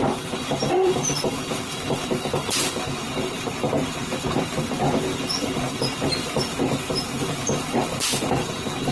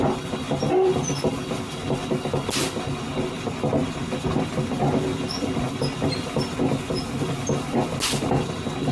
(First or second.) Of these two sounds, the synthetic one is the first